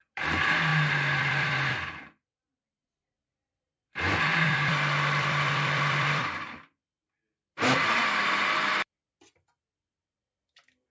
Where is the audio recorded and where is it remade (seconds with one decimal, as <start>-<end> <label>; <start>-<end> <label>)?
0.0-10.9 remade